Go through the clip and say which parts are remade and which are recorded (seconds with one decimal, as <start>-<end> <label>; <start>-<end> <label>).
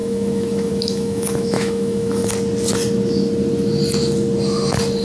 0.0-2.2 remade; 2.2-5.0 recorded